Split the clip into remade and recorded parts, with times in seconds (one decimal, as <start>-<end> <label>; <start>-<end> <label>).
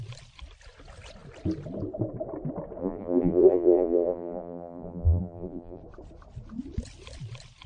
0.0-2.8 recorded; 2.8-5.8 remade; 5.8-7.7 recorded